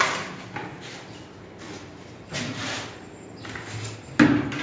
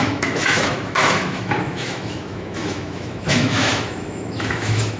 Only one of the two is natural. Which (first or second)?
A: first